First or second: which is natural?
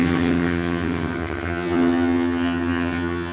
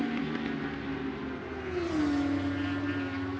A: second